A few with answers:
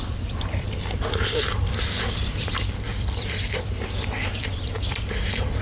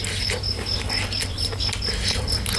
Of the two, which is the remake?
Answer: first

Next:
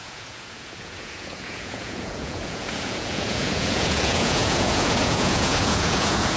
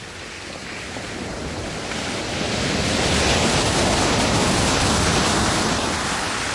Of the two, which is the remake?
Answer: first